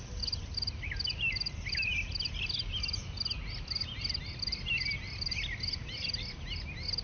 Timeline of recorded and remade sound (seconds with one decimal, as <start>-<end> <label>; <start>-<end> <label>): 0.0-7.0 recorded